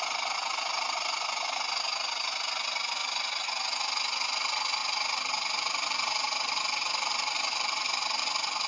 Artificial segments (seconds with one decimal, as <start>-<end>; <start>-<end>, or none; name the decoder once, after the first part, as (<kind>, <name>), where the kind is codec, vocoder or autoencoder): none